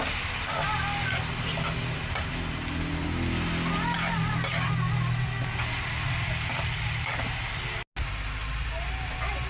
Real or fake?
real